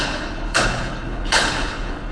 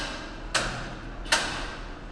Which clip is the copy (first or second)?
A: first